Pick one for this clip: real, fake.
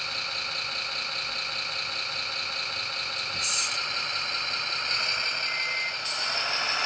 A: real